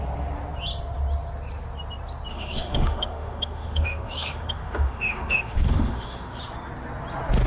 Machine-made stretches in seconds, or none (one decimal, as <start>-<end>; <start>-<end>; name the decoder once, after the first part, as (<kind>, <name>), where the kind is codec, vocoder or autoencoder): 2.3-6.4 (autoencoder, DAC-VAE)